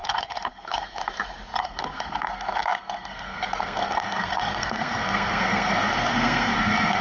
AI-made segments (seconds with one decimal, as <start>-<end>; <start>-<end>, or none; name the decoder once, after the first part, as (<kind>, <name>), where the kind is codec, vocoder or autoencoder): 0.0-1.0 (codec, SNAC); 1.6-7.0